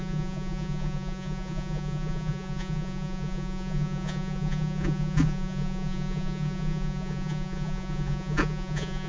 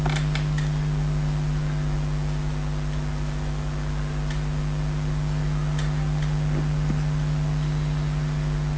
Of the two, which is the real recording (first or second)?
second